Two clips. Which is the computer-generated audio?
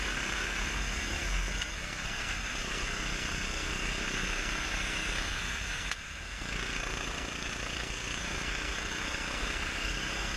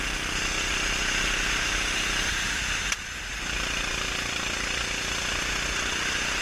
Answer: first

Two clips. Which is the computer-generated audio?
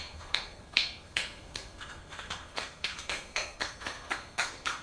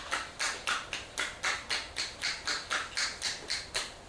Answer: first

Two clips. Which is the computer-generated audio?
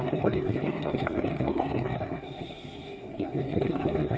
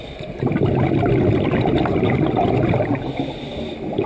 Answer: first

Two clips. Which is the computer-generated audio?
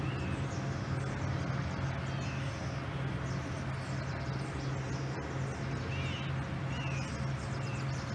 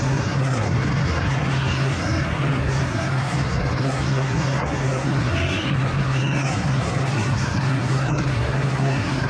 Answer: second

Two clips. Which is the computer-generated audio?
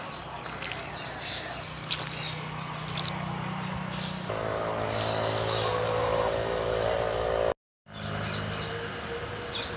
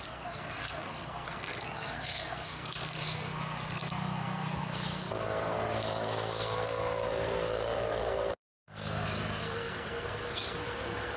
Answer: second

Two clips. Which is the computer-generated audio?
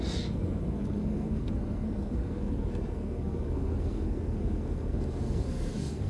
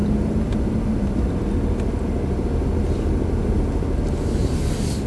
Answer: first